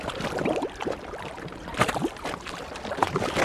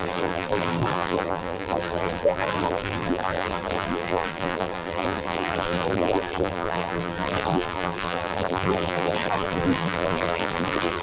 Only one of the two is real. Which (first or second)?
first